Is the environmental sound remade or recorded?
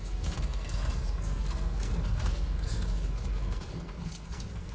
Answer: remade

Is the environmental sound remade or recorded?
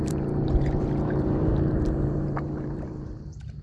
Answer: remade